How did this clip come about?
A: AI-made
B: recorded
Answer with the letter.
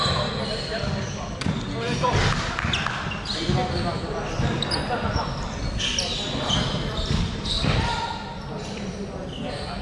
B